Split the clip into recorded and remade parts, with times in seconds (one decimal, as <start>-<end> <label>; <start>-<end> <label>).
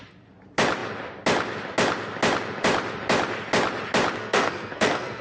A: 0.0-4.2 recorded; 4.2-5.2 remade